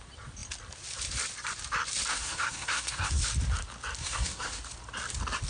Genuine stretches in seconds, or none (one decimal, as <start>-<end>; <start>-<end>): 0.0-2.1; 3.2-4.0; 4.6-5.5